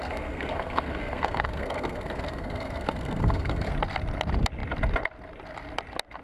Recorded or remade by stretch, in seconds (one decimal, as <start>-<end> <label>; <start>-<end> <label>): 0.0-3.7 remade; 3.7-6.2 recorded